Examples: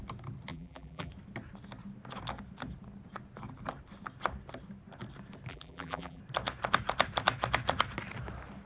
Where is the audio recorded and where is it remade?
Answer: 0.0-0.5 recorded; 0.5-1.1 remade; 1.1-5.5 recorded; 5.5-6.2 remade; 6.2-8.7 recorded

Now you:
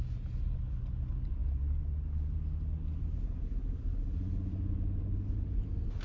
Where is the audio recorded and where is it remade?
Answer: 0.0-6.0 recorded

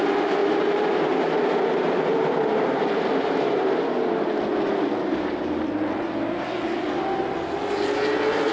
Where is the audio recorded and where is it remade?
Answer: 0.0-0.4 recorded; 0.4-3.7 remade; 3.7-8.5 recorded

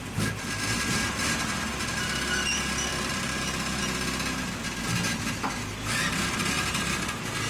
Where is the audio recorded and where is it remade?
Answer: 0.0-2.9 recorded; 2.9-3.8 remade; 3.8-7.5 recorded